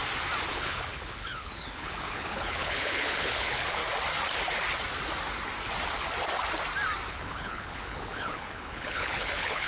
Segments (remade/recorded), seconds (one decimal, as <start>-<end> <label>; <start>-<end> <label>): 0.0-0.5 recorded; 0.5-3.8 remade; 3.8-7.1 recorded; 7.1-9.7 remade